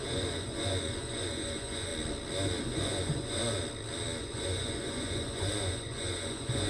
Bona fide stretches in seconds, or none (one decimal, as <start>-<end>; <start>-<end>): 1.9-2.6; 3.4-4.2